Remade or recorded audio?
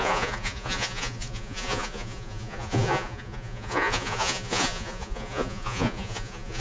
remade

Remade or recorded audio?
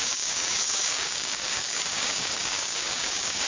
remade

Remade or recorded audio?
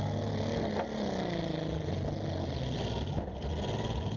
recorded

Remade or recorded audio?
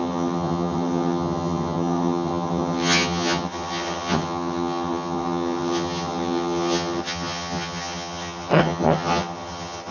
remade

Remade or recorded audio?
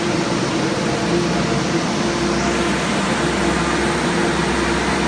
recorded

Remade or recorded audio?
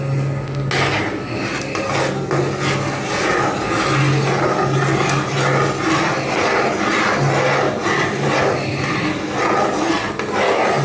recorded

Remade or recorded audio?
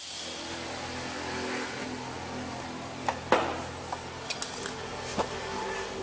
recorded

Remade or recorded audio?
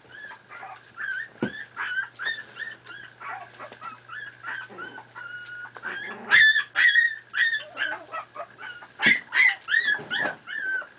recorded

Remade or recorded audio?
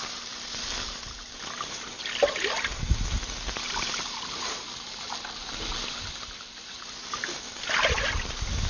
recorded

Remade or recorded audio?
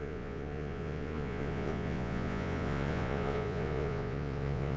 remade